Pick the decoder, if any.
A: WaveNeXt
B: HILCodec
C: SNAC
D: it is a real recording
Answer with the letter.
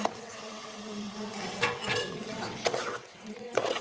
A